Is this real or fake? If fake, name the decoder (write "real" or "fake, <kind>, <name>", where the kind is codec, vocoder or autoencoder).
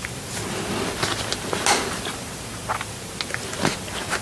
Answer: real